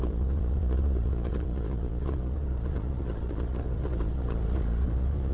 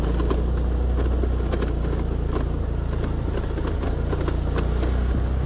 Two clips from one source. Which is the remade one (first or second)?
first